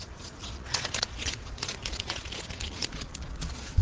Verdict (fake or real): fake